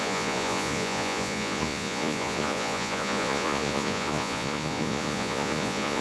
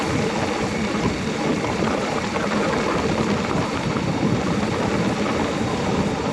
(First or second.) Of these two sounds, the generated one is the first